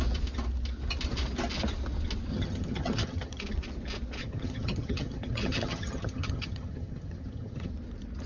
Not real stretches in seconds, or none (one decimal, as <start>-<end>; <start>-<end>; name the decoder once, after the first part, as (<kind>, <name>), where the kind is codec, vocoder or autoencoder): 2.3-3.4 (vocoder, HiFi-GAN); 4.2-7.7